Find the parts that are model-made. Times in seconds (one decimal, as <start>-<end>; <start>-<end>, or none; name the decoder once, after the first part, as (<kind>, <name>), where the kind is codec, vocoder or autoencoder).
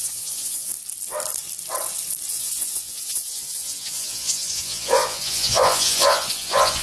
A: 0.0-0.7 (vocoder, Vocos); 2.3-6.8